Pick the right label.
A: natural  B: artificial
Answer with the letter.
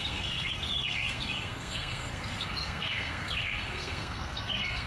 B